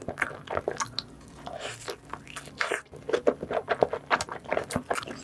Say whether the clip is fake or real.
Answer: real